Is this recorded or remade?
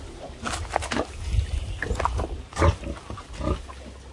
recorded